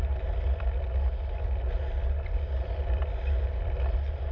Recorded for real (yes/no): yes